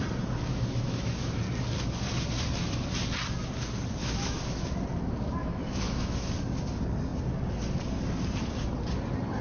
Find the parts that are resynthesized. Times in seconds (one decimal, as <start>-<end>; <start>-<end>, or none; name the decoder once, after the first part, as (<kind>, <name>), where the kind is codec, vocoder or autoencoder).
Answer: 0.5-1.4 (autoencoder, DAC-VAE); 4.0-4.7; 5.4-6.3